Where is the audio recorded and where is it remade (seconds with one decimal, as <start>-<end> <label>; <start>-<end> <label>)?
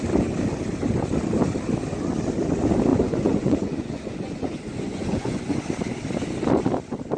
0.0-2.9 recorded; 2.9-5.6 remade; 5.6-7.2 recorded